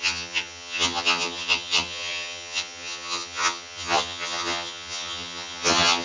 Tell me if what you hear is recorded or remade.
remade